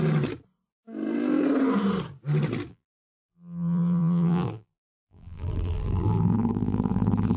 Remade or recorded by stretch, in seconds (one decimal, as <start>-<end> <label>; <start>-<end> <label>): 0.0-2.7 recorded; 2.7-7.4 remade